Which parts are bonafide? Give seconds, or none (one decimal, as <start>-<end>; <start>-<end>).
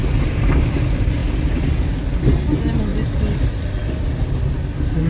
0.0-5.1